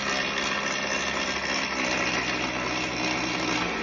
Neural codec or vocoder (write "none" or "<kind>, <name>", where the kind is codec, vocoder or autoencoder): none